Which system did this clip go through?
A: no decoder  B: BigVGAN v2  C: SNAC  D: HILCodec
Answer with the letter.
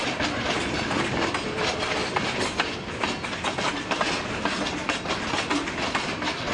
A